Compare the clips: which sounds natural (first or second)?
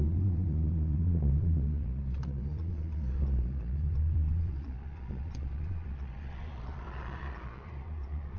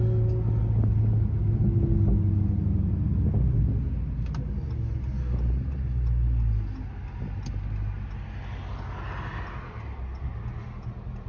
second